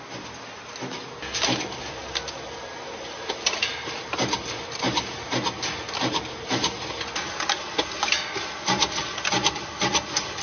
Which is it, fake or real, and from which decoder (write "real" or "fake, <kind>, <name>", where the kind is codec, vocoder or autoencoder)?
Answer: real